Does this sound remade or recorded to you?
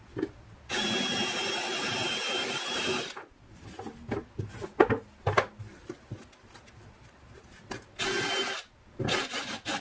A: recorded